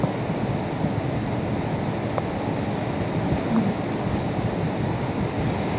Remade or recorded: recorded